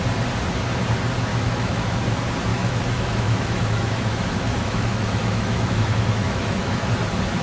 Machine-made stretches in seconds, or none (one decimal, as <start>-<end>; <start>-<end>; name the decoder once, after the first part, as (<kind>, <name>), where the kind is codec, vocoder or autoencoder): 1.3-2.0 (autoencoder, DAC-VAE); 2.5-6.9